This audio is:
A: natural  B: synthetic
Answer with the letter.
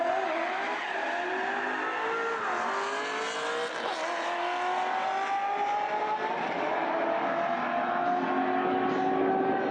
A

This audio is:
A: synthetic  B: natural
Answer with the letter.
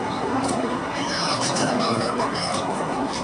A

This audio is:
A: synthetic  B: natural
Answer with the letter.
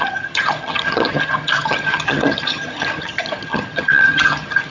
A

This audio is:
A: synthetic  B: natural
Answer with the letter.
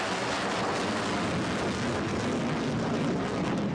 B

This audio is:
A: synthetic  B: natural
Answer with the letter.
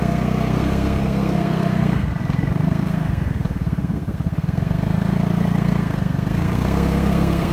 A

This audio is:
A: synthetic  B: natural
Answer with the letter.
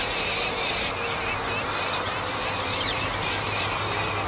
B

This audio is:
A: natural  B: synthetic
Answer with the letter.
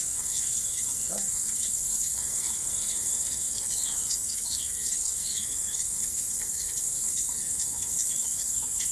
B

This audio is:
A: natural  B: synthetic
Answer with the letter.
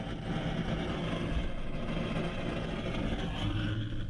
A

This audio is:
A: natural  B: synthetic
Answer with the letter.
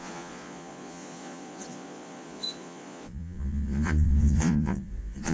B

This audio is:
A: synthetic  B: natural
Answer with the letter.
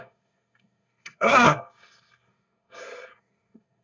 A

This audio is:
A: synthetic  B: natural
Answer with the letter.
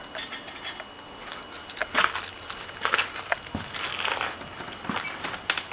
B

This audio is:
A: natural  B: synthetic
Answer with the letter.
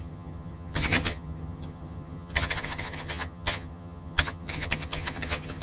B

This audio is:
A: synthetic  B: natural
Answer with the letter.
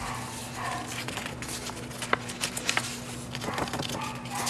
B